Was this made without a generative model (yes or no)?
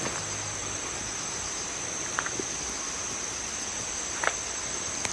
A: yes